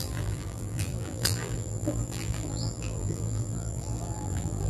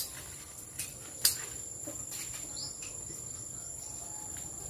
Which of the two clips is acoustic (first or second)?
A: second